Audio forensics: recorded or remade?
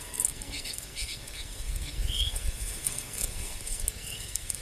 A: remade